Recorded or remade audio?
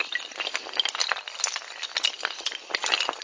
recorded